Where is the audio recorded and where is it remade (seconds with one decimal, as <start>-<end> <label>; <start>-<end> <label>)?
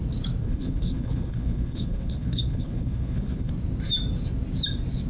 0.0-0.4 recorded; 0.4-3.5 remade; 3.5-5.1 recorded